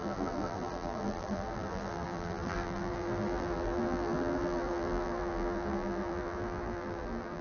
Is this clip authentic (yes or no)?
no